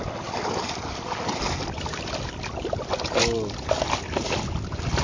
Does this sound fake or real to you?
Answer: real